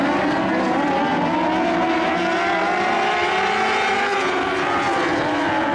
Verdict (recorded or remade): recorded